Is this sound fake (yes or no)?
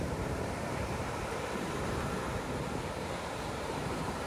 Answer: yes